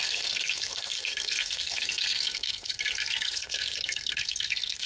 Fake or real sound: fake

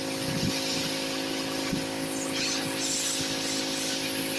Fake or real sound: real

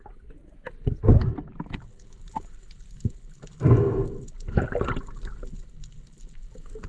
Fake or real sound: real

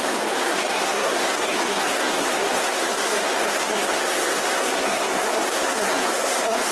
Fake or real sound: fake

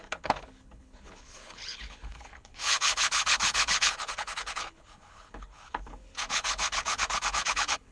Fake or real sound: fake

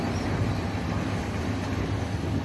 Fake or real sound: real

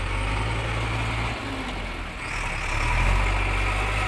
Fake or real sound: real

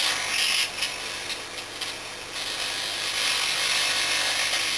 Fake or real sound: real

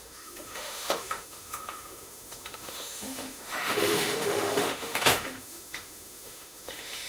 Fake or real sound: fake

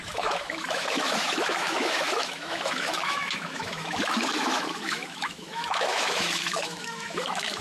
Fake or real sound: fake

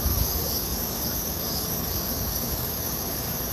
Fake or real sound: fake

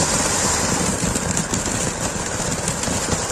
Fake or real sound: fake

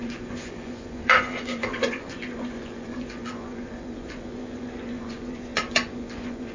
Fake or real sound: fake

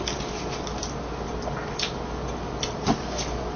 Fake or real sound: real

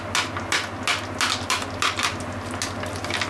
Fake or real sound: real